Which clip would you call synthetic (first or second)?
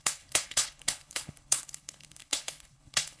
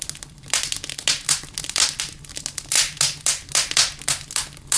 first